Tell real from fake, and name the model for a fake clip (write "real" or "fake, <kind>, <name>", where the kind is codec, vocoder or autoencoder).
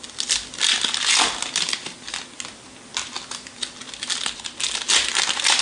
real